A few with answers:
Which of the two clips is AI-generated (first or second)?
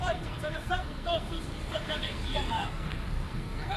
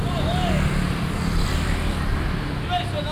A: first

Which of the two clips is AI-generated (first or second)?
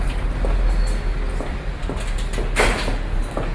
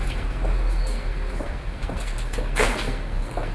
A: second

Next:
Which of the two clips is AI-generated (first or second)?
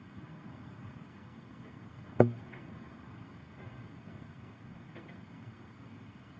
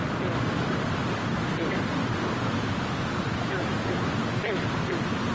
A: first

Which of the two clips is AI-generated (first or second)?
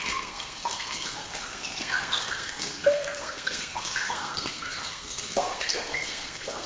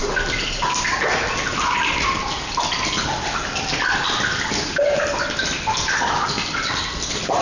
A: first